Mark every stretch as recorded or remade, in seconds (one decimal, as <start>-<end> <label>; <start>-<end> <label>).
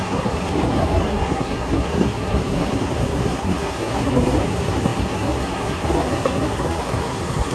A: 0.0-7.5 remade